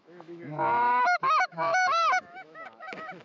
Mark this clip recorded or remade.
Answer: remade